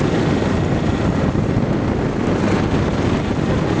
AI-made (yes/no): no